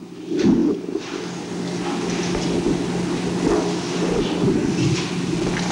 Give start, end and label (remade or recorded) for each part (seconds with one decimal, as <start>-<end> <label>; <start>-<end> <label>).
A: 0.0-5.7 recorded